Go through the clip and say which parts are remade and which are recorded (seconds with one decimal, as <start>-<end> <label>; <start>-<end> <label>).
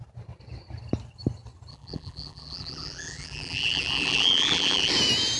0.0-1.7 recorded; 1.7-4.9 remade; 4.9-5.4 recorded